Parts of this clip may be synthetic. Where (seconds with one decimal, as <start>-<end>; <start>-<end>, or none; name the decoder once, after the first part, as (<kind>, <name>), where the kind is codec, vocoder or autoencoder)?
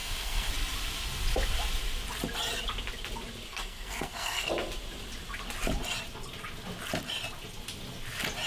0.0-0.5 (codec, SNAC); 3.5-4.5